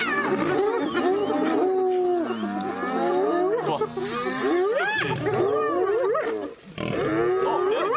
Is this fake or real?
real